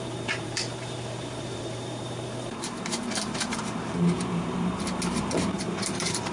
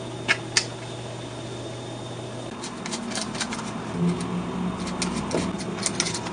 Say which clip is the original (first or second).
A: second